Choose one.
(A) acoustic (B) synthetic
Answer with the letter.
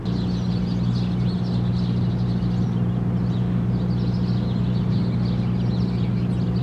A